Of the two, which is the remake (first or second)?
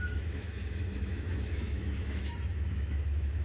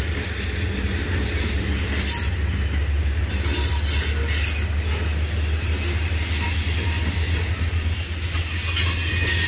first